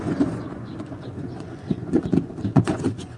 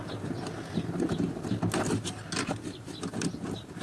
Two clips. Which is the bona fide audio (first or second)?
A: second